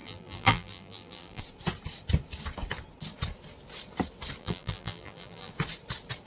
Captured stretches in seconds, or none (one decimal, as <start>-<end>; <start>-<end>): 1.4-4.4; 5.5-6.3